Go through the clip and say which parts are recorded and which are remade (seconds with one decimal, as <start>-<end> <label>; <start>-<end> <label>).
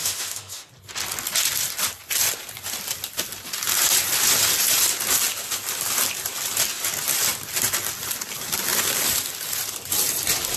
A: 0.0-0.7 remade; 0.7-10.6 recorded